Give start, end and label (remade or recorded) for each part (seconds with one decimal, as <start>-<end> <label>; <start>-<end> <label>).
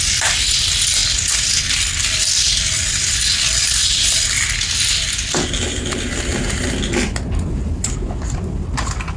0.0-9.2 recorded